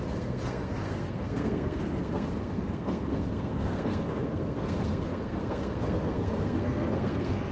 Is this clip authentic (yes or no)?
no